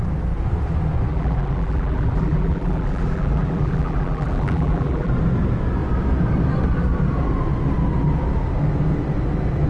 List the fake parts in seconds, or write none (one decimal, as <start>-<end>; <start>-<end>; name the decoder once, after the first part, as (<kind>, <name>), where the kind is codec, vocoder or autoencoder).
1.1-5.1 (vocoder, BigVGAN v2)